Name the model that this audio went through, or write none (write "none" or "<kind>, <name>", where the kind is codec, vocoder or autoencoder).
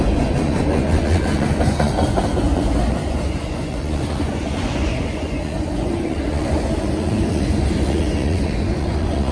vocoder, Vocos